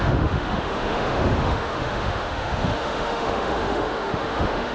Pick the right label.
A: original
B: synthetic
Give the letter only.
B